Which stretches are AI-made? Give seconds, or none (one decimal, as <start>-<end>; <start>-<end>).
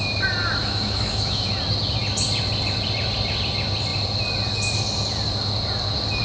0.6-1.5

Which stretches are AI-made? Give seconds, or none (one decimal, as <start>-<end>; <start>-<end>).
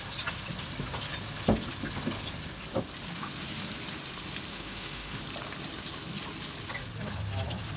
4.5-5.2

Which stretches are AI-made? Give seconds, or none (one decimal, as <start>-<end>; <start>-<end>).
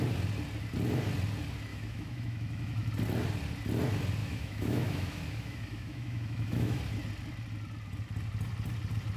1.7-2.9; 4.2-6.8